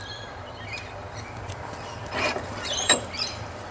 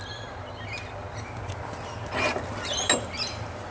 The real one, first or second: second